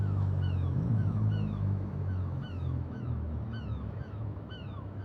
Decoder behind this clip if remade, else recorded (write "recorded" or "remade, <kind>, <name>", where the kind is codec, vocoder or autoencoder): remade, autoencoder, DAC-VAE